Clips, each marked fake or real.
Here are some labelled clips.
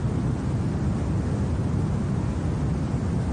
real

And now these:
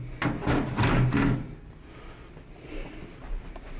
real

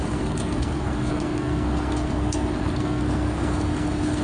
fake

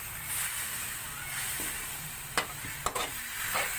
real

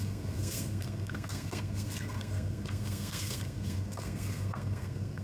fake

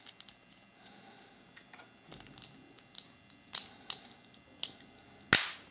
real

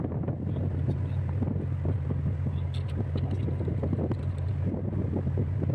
real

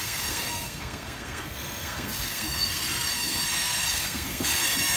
fake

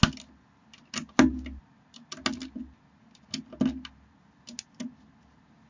real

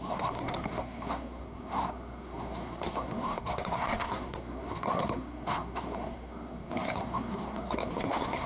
fake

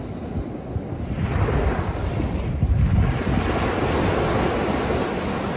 real